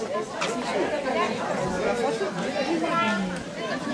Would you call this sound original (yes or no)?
yes